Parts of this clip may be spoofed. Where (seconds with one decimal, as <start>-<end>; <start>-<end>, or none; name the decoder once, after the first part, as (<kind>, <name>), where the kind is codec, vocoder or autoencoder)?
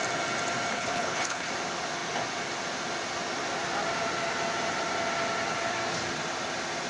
0.7-1.5 (codec, HILCodec)